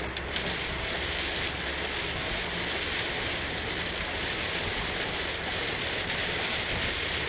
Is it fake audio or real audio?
real